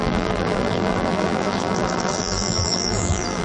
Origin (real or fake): fake